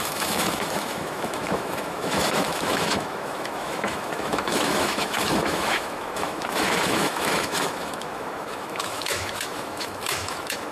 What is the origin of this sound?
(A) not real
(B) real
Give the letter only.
A